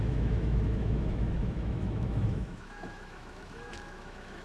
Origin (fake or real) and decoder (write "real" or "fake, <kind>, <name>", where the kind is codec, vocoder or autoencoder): fake, autoencoder, DAC-VAE